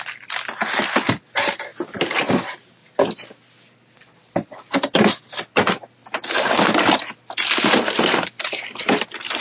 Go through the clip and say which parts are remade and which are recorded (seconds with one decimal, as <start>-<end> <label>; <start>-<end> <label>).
0.0-9.4 recorded